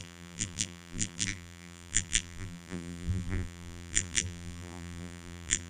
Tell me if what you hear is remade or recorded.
remade